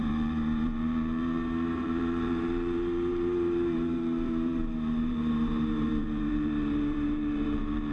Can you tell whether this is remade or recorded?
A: remade